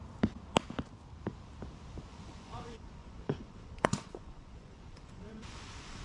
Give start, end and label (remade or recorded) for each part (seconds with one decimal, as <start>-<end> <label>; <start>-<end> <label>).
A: 0.0-2.1 recorded; 2.1-6.0 remade